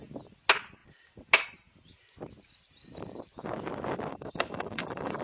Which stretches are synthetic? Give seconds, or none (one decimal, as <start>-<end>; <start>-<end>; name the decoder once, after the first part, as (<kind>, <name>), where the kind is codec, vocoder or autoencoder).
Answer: 4.1-5.2 (codec, DAC)